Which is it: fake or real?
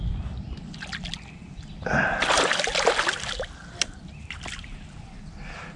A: real